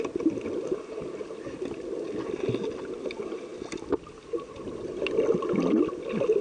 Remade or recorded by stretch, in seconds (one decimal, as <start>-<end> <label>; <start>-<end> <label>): 0.0-6.4 recorded